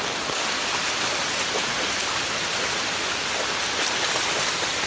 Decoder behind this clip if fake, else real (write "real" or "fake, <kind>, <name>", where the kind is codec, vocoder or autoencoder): real